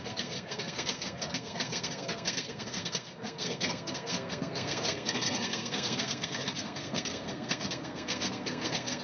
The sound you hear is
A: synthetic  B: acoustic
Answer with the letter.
A